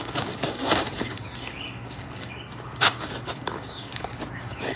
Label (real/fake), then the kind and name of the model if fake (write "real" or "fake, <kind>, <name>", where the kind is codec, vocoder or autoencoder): fake, codec, DAC